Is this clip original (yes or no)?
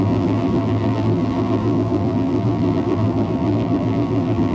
no